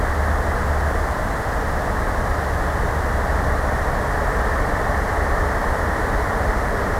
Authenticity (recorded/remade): recorded